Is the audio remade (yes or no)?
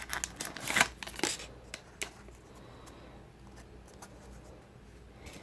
no